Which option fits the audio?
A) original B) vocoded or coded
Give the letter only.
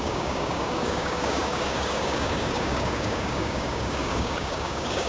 B